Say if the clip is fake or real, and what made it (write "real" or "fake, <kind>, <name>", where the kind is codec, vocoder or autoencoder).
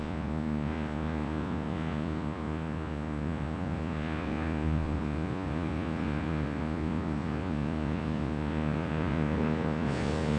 fake, vocoder, Vocos